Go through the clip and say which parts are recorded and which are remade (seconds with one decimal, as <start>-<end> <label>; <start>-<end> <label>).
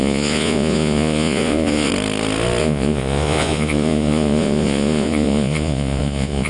0.0-1.9 remade; 1.9-2.6 recorded; 2.6-6.5 remade